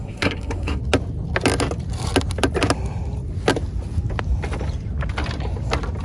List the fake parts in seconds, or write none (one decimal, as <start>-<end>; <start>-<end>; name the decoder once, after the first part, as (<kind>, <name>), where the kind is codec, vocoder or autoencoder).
0.0-0.8 (codec, SNAC)